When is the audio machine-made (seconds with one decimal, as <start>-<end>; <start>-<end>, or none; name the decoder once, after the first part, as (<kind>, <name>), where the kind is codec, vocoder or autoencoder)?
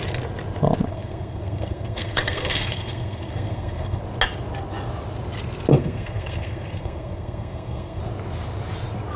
0.9-4.0 (codec, SNAC); 5.7-8.0